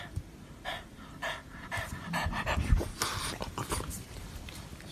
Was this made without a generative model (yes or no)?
no